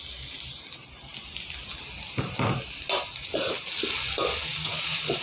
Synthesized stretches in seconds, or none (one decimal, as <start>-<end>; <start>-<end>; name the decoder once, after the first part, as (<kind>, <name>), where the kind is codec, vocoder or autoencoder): none